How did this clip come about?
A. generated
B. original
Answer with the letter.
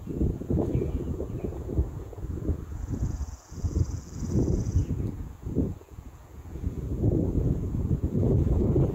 A